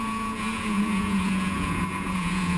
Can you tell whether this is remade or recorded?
remade